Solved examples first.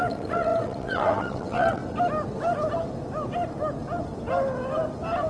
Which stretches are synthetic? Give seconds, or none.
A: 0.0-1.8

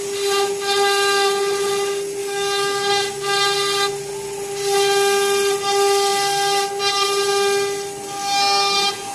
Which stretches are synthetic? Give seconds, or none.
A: 2.2-2.9